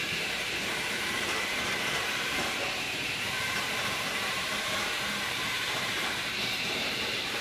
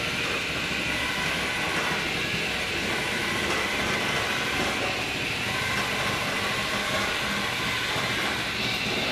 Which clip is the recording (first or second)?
second